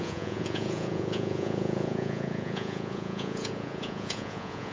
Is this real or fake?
fake